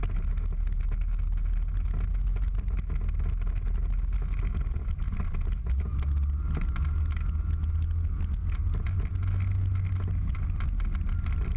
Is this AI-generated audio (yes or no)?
no